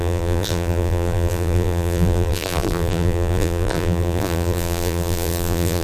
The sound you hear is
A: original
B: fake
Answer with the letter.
B